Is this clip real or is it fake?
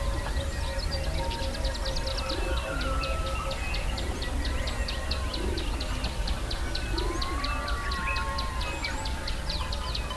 real